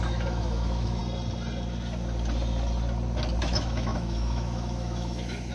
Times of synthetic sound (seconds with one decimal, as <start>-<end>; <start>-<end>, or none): 0.0-1.0; 3.4-5.5